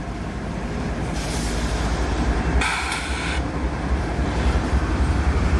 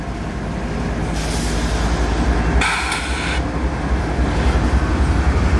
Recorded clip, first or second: second